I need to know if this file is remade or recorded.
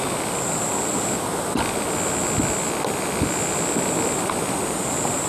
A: recorded